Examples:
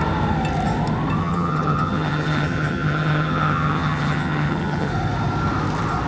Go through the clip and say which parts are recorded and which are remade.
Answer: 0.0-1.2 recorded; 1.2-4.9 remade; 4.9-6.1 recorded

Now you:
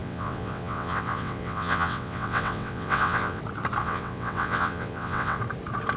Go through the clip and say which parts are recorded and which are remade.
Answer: 0.0-3.4 remade; 3.4-3.8 recorded; 3.8-5.4 remade; 5.4-6.0 recorded

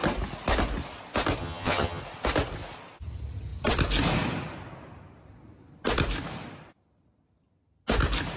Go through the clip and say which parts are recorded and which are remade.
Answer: 0.0-1.4 recorded; 1.4-2.0 remade; 2.0-8.4 recorded

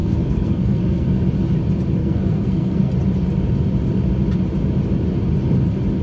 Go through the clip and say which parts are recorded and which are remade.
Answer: 0.0-1.2 remade; 1.2-2.0 recorded; 2.0-2.9 remade; 2.9-6.0 recorded

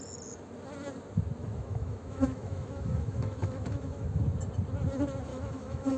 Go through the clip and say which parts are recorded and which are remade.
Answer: 0.0-1.4 recorded; 1.4-4.2 remade; 4.2-5.3 recorded; 5.3-6.0 remade

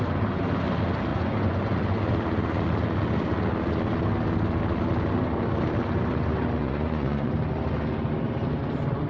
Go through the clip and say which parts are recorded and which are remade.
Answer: 0.0-1.1 recorded; 1.1-2.0 remade; 2.0-6.6 recorded; 6.6-7.3 remade; 7.3-9.1 recorded

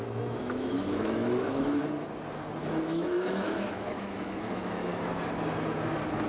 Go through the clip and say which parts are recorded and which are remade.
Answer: 0.0-1.8 remade; 1.8-2.6 recorded; 2.6-4.9 remade; 4.9-6.3 recorded

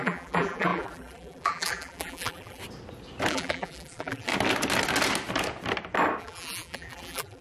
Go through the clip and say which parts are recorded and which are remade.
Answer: 0.0-2.6 remade; 2.6-3.3 recorded; 3.3-4.3 remade; 4.3-6.2 recorded; 6.2-7.4 remade